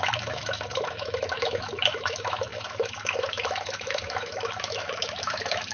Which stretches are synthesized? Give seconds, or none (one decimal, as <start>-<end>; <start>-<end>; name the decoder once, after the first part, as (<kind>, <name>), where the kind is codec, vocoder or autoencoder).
0.0-5.7 (autoencoder, DAC-VAE)